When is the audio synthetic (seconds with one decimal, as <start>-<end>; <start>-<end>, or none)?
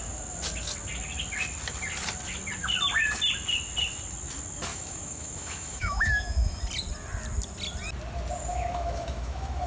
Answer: 4.7-6.6; 8.5-9.7